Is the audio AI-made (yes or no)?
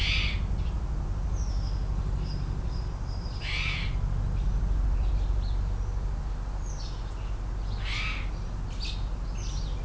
no